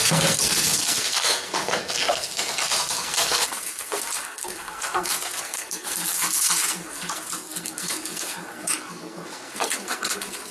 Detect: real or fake fake